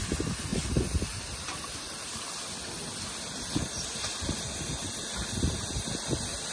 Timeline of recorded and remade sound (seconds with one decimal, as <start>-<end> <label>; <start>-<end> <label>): 0.0-6.5 recorded